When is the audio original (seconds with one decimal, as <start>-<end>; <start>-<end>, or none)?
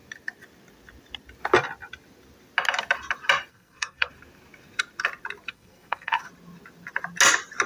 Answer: 0.0-3.5; 4.1-5.5; 6.2-7.7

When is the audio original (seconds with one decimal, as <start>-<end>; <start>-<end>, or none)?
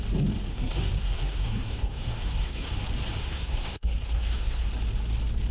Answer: 0.0-0.5; 2.7-3.2; 4.7-5.5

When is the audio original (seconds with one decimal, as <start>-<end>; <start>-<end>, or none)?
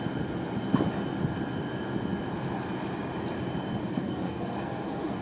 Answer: 0.0-3.8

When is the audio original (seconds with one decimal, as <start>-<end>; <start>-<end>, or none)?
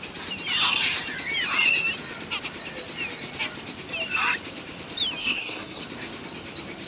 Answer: 0.0-5.2; 5.8-6.9